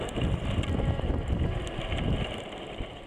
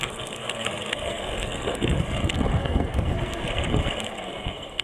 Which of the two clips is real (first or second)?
first